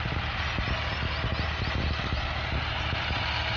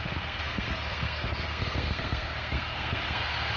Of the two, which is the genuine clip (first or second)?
first